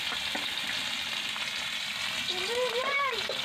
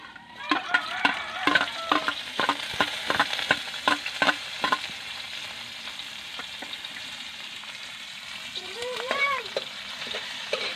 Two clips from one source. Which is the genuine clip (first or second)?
first